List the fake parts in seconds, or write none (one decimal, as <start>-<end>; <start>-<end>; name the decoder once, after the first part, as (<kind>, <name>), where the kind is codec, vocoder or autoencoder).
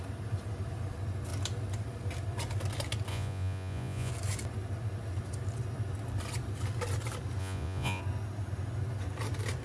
3.1-4.1 (vocoder, Vocos); 7.4-8.0